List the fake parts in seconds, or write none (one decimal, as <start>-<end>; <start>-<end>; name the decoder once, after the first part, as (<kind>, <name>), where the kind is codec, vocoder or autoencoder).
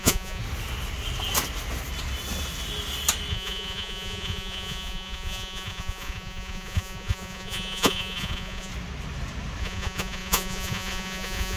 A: 0.0-0.4 (vocoder, Vocos); 3.3-8.7; 9.6-11.6